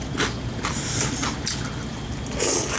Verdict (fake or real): real